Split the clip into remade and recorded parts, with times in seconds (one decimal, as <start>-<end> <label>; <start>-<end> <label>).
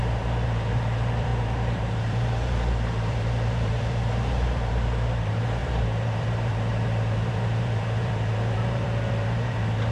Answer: 0.0-9.9 remade